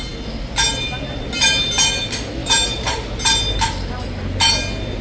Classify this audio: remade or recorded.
recorded